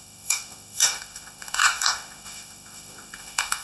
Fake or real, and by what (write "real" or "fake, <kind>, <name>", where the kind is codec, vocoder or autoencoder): fake, autoencoder, DAC-VAE